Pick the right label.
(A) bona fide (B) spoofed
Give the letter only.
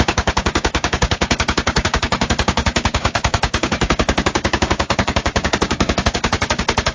B